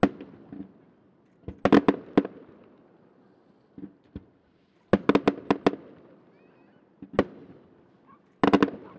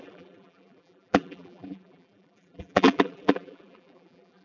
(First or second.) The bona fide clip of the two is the first